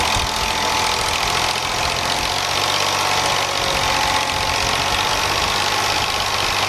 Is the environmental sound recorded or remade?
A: recorded